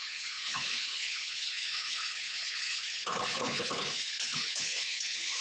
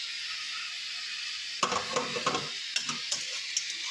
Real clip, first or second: second